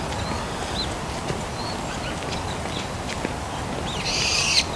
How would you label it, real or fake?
real